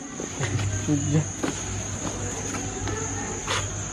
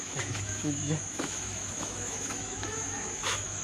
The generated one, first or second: second